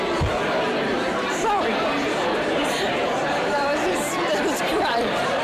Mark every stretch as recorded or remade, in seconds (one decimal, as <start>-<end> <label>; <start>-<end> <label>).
0.0-0.9 recorded; 0.9-4.1 remade; 4.1-4.7 recorded; 4.7-5.4 remade